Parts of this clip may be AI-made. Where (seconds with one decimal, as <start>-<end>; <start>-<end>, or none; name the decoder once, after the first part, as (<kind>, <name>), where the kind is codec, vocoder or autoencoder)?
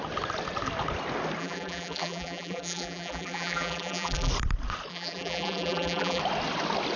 1.4-4.3 (vocoder, BigVGAN v2); 4.9-6.2